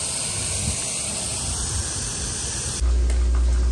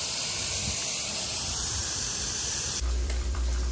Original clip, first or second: first